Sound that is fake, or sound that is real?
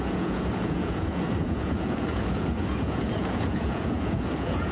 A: fake